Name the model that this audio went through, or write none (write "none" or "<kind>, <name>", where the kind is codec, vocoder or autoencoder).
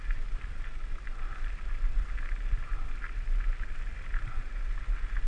none